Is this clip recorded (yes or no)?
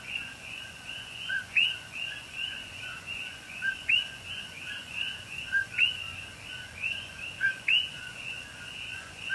no